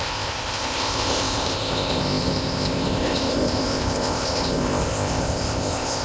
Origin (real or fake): fake